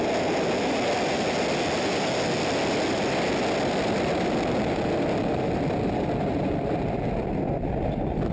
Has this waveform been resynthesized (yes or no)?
no